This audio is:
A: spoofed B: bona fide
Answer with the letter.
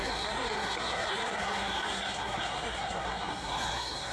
A